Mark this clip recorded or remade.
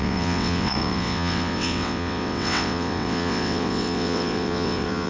remade